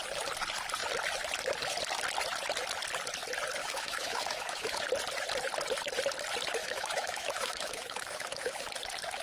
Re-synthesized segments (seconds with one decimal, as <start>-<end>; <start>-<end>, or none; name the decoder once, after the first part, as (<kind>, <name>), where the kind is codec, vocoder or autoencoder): 3.6-4.8 (autoencoder, DAC-VAE); 6.6-8.7